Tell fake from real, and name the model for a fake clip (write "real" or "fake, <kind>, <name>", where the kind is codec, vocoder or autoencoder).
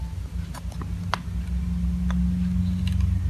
real